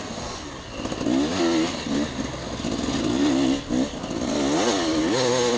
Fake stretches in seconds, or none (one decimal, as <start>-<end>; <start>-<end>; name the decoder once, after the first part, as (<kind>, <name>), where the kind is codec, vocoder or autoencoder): none